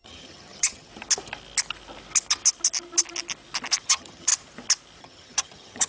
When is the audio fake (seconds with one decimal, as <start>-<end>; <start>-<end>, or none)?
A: 0.0-0.9; 3.8-4.3; 5.0-5.9